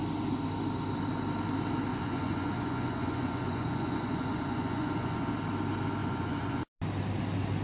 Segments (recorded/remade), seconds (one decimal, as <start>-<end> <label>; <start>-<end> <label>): 0.0-1.9 recorded; 1.9-5.3 remade; 5.3-6.0 recorded; 6.0-6.6 remade; 6.6-7.6 recorded